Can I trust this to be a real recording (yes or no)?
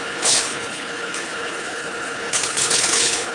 no